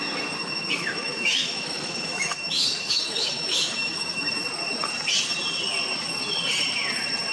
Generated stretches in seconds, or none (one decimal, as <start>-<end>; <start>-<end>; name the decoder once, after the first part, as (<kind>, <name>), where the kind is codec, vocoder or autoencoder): 0.4-4.3 (autoencoder, DAC-VAE)